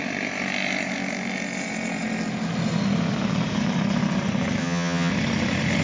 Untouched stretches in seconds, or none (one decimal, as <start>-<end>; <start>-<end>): 0.0-4.6; 5.1-5.8